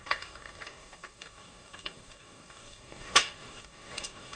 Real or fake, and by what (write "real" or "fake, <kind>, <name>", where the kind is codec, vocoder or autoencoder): fake, codec, DAC